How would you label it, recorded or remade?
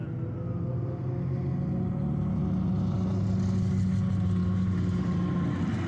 recorded